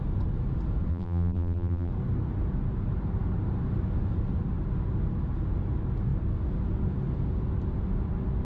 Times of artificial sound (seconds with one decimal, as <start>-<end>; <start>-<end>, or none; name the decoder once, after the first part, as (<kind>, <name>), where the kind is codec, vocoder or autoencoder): 0.9-1.9 (vocoder, BigVGAN v2)